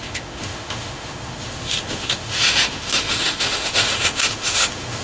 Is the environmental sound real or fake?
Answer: fake